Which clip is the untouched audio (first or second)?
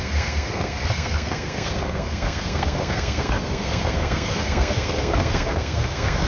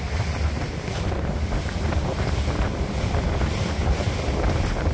second